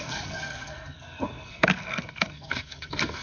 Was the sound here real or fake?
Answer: fake